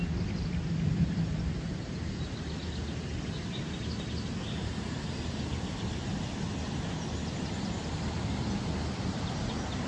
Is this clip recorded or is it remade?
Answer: recorded